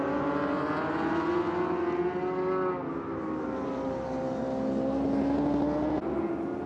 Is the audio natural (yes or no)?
yes